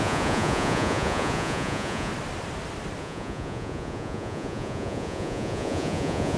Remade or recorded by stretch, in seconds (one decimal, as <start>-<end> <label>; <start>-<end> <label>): 0.0-2.1 remade; 2.1-3.0 recorded; 3.0-6.4 remade